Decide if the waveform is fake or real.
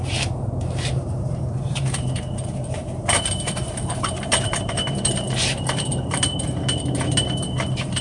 fake